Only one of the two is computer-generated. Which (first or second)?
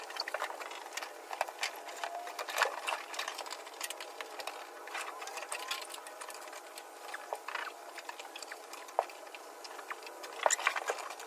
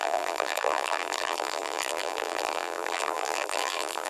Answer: second